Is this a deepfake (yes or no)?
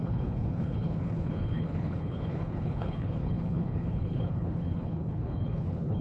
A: yes